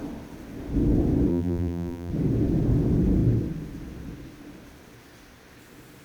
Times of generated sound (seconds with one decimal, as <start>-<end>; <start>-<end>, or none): 1.3-2.1